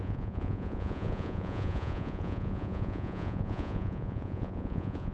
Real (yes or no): no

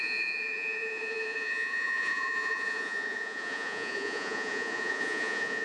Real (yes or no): no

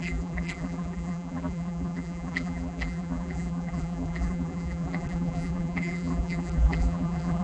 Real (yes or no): no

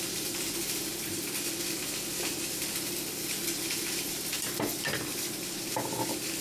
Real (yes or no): no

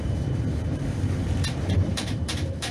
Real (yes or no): no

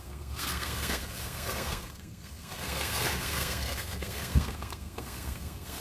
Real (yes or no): no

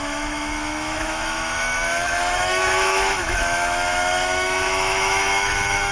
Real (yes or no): no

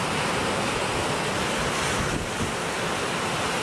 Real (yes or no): yes